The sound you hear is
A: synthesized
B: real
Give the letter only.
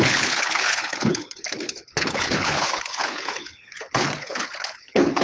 A